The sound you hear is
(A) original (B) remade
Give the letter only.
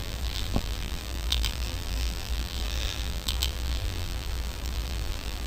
B